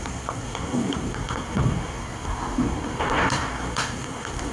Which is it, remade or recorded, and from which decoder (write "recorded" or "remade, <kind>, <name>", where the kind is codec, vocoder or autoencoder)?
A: remade, codec, SNAC